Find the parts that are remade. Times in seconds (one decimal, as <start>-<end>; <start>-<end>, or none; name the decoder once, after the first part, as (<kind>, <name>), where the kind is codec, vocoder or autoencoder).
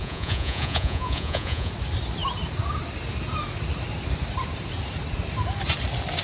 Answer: 0.0-1.7 (vocoder, Vocos)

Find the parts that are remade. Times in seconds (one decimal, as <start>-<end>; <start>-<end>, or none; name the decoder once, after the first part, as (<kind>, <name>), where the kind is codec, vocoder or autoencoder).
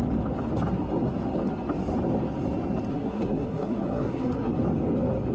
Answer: 2.9-4.5 (codec, SNAC)